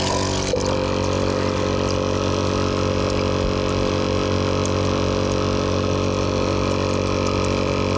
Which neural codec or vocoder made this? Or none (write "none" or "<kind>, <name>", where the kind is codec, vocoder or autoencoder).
none